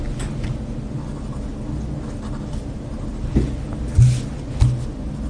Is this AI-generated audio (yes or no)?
no